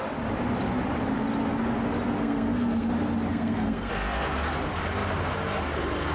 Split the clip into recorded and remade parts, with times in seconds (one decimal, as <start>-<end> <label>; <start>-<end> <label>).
0.0-2.2 recorded; 2.2-2.9 remade; 2.9-3.3 recorded; 3.3-3.9 remade; 3.9-6.1 recorded